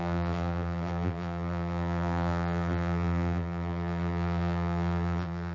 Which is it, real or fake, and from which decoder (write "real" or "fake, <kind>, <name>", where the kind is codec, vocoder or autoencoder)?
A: fake, vocoder, BigVGAN v2